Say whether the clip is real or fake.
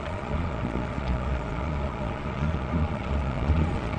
fake